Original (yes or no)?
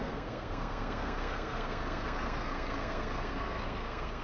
no